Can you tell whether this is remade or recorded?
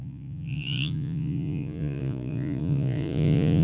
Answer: remade